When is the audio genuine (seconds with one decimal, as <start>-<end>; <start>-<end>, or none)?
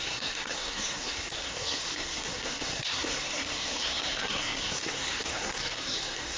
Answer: none